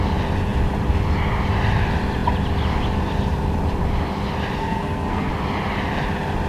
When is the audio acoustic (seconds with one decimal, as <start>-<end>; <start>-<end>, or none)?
0.0-4.6; 5.3-6.5